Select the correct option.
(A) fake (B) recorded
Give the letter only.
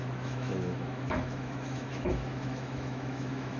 A